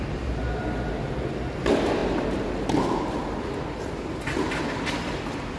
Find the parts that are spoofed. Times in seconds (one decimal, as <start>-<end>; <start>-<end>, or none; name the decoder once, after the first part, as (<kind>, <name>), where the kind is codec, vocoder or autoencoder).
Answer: none